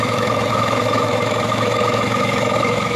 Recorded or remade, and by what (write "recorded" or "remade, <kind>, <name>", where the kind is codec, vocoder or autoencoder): remade, autoencoder, DAC-VAE